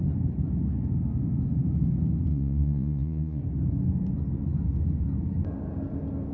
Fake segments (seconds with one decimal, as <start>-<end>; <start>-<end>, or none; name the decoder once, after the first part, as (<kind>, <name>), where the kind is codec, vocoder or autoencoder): 2.3-3.4 (vocoder, Vocos)